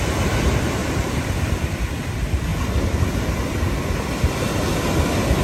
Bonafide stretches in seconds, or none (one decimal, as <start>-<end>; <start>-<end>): 0.0-5.4

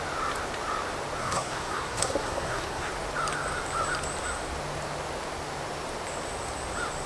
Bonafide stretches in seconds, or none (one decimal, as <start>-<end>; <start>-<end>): 0.0-1.2; 2.9-7.1

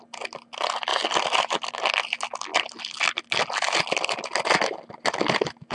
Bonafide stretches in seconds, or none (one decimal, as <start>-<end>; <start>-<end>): 0.0-5.7